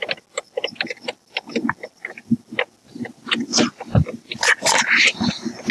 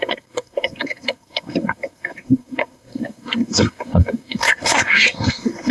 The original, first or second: first